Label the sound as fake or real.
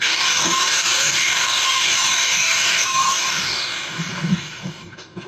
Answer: fake